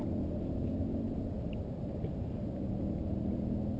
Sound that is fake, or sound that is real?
real